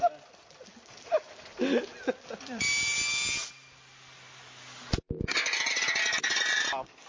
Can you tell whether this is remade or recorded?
recorded